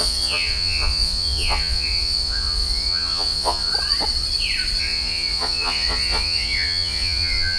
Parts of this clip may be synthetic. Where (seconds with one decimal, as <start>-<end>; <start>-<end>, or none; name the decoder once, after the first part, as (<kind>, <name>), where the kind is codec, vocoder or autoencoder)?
0.0-3.7 (vocoder, Vocos); 4.8-7.6